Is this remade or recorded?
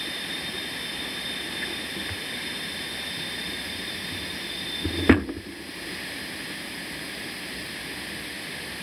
recorded